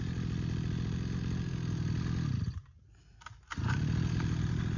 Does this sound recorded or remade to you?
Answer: recorded